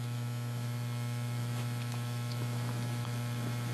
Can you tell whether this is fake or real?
fake